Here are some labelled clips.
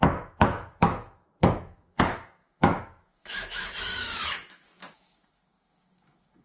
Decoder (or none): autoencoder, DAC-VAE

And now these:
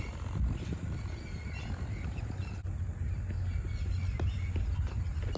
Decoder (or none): none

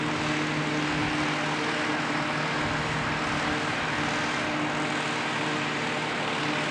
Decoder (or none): none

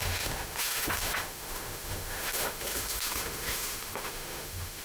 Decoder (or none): autoencoder, DAC-VAE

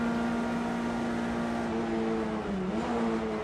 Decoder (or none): none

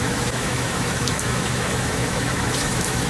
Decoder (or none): autoencoder, DAC-VAE